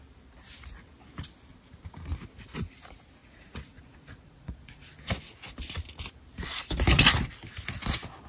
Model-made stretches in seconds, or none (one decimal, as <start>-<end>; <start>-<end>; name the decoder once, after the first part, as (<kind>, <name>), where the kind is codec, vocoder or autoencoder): 3.2-4.9 (vocoder, Vocos)